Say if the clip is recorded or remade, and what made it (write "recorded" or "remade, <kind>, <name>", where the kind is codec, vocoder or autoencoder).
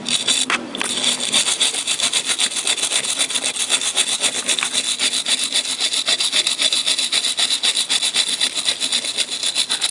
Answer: recorded